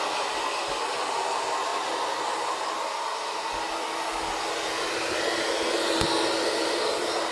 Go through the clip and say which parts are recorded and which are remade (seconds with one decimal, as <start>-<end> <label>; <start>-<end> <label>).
0.0-7.3 recorded

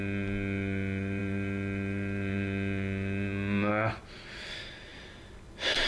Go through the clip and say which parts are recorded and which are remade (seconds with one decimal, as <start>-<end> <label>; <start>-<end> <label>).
0.0-5.9 recorded

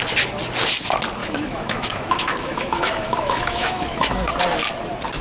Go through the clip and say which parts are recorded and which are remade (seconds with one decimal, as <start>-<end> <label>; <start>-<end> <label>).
0.0-1.2 recorded; 1.2-4.3 remade; 4.3-5.2 recorded

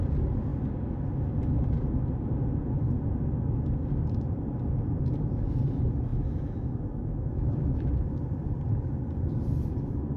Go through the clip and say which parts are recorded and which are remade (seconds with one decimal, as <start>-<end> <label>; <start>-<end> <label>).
0.0-6.1 recorded; 6.1-7.9 remade; 7.9-10.2 recorded

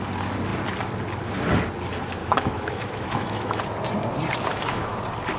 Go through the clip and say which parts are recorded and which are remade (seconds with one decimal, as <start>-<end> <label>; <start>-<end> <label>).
0.0-2.2 recorded; 2.2-3.6 remade; 3.6-4.5 recorded; 4.5-5.0 remade; 5.0-5.4 recorded